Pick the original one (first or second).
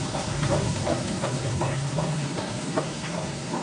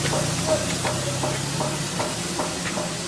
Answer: second